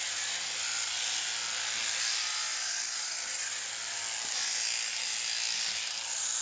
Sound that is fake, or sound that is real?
real